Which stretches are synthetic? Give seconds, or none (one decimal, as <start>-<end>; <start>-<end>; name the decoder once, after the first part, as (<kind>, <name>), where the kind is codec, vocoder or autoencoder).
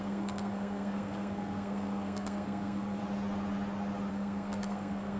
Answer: 0.0-3.0 (codec, SNAC); 4.1-5.2